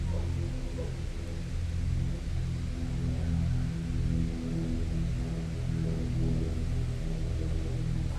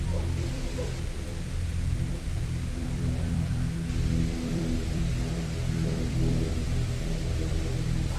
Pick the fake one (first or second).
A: second